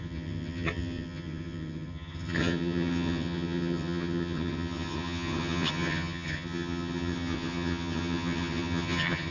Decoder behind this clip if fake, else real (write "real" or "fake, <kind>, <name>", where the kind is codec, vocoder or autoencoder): fake, vocoder, HiFi-GAN